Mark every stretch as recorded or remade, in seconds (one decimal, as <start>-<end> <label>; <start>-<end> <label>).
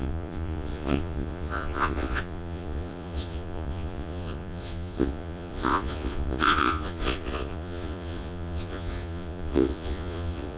0.0-10.6 remade